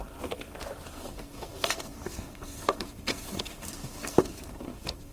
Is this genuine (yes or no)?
no